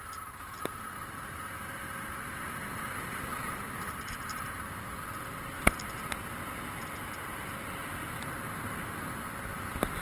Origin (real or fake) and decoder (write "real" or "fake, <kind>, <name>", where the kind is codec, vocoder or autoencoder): real